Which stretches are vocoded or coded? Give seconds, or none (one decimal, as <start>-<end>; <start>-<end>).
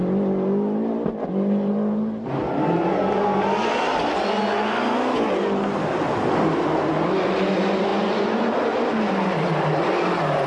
none